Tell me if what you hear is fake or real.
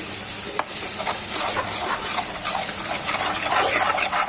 fake